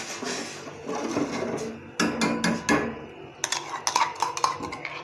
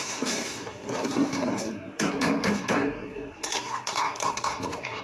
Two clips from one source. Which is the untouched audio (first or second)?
first